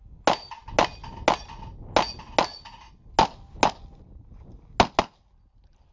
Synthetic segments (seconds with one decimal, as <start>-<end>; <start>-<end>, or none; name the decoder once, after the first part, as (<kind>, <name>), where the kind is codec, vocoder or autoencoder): none